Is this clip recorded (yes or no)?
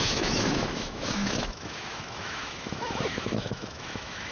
no